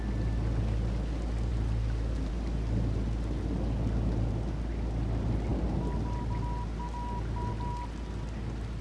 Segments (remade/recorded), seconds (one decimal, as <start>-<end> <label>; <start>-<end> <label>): 0.0-8.8 recorded